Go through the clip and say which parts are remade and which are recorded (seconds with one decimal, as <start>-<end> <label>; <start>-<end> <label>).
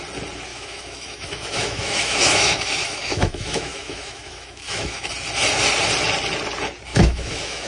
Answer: 0.0-0.5 recorded; 0.5-5.1 remade; 5.1-6.9 recorded; 6.9-7.7 remade